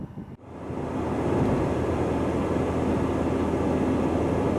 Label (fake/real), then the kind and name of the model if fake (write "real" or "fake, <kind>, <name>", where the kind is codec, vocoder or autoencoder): real